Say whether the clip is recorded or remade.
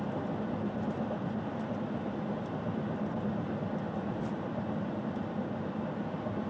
recorded